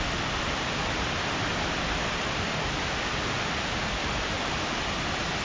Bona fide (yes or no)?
yes